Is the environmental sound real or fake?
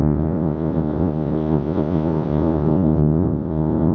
fake